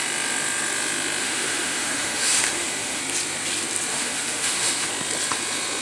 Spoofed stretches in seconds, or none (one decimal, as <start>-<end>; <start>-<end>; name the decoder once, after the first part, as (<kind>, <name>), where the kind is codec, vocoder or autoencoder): 1.2-3.0 (autoencoder, DAC-VAE); 3.9-4.9